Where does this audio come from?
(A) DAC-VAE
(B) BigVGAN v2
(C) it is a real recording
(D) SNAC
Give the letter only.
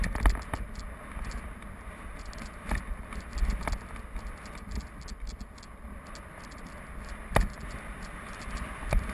C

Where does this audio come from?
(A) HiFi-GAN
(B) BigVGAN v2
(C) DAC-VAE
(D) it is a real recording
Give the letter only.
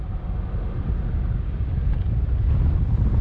D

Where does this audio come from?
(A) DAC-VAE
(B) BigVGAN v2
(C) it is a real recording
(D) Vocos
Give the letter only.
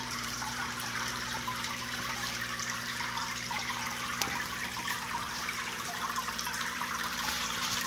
B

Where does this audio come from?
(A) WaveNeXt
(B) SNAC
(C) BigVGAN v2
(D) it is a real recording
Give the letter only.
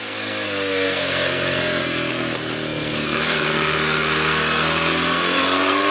B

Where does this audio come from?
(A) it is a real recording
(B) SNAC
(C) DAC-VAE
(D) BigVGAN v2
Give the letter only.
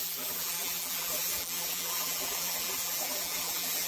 D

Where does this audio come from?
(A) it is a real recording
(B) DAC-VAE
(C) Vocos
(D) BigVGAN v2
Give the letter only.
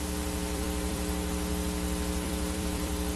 D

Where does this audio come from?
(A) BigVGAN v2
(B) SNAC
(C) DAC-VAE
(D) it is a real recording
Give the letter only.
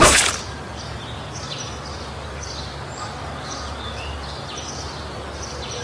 D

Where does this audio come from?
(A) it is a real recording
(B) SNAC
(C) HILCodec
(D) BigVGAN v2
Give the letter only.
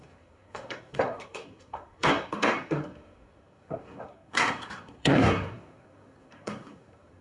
B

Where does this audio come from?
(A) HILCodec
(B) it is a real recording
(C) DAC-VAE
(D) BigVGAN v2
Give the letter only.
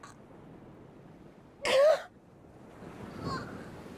B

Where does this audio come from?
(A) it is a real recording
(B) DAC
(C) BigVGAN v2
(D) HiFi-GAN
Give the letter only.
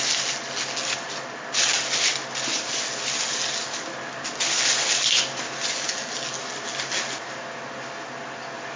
A